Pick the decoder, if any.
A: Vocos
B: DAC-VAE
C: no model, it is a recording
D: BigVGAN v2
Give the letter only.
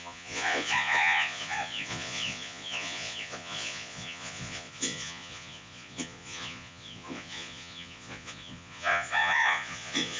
A